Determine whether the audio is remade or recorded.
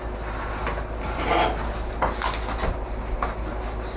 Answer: recorded